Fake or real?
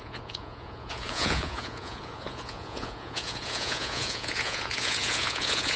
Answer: fake